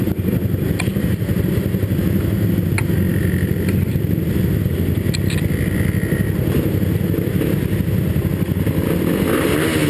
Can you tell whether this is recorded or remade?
recorded